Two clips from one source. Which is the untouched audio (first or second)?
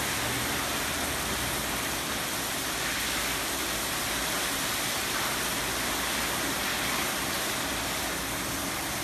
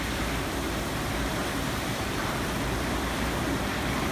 first